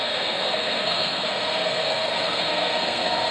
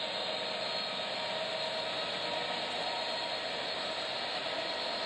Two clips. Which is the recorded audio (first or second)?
second